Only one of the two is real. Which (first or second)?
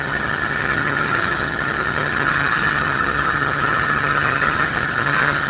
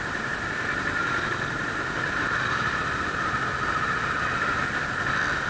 second